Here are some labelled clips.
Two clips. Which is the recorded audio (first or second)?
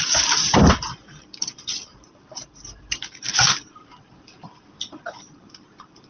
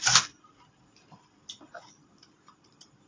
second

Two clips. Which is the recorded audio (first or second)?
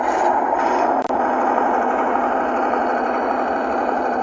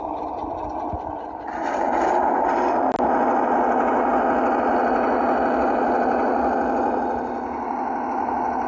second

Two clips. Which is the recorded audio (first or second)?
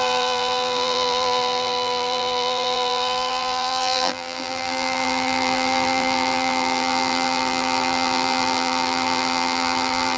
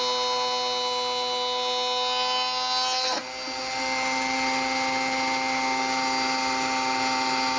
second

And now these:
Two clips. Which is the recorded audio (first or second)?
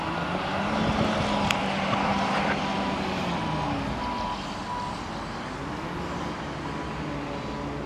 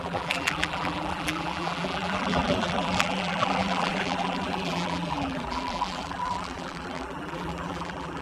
first